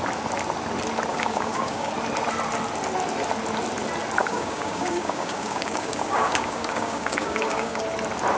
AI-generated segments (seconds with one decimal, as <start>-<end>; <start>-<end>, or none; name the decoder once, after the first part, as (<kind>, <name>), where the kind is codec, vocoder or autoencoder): 1.1-1.9 (codec, DAC); 4.2-7.8